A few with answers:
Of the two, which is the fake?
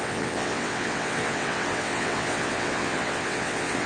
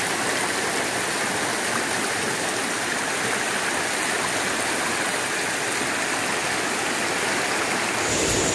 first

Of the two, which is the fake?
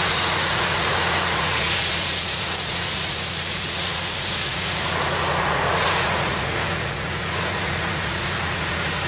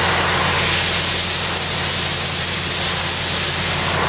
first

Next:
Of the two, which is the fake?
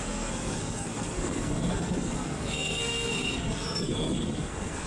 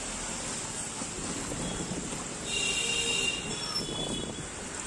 first